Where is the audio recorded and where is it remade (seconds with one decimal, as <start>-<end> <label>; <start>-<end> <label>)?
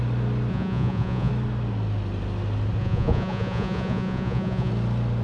0.0-0.5 recorded; 0.5-1.3 remade; 1.3-2.8 recorded; 2.8-4.7 remade; 4.7-5.2 recorded